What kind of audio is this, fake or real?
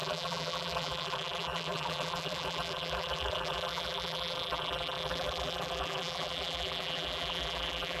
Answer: fake